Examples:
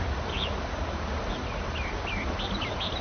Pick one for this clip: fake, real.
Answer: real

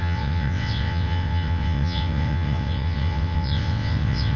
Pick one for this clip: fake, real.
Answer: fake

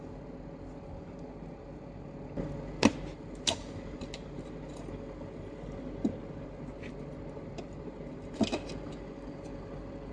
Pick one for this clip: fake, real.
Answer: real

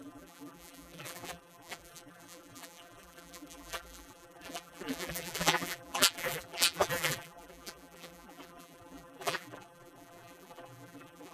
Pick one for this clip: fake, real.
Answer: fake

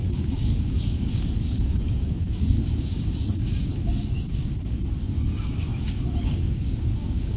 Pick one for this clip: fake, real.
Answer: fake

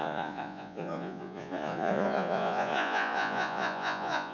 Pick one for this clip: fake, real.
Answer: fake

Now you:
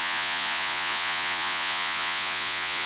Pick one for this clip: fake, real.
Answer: fake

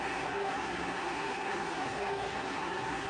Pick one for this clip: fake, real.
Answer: fake